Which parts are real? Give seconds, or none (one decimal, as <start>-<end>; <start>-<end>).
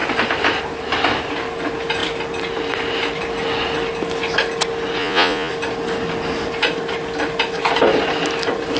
0.0-5.0; 5.5-8.8